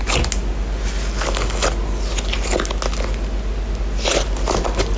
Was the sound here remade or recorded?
recorded